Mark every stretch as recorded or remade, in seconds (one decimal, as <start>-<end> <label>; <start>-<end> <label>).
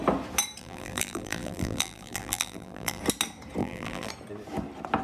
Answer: 0.0-0.6 recorded; 0.6-3.0 remade; 3.0-3.6 recorded; 3.6-4.1 remade; 4.1-5.0 recorded